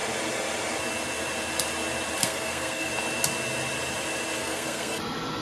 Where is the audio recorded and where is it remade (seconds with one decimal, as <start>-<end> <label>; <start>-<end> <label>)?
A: 0.0-2.2 recorded; 2.2-2.9 remade; 2.9-4.4 recorded; 4.4-5.0 remade; 5.0-5.4 recorded